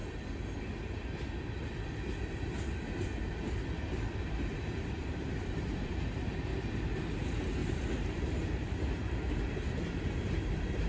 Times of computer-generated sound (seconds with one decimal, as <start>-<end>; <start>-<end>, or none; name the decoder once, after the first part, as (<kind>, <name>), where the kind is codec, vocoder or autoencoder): 4.8-6.5 (vocoder, BigVGAN v2); 7.1-10.9